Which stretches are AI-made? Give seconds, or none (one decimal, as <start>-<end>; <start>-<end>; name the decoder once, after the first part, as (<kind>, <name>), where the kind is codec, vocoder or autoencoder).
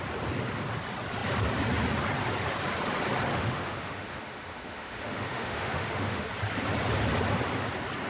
3.3-6.3 (autoencoder, DAC-VAE)